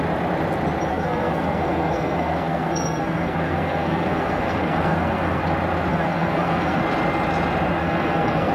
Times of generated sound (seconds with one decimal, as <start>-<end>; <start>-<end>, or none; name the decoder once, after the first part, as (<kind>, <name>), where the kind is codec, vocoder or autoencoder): 0.9-5.4 (codec, SNAC); 5.9-6.8; 7.8-8.5